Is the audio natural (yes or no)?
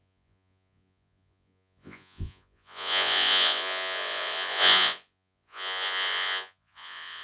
no